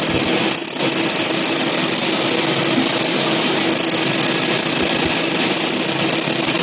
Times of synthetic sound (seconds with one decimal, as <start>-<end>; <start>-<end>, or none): none